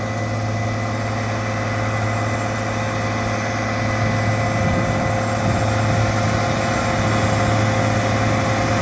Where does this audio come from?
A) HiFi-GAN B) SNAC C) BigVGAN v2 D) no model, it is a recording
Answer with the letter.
D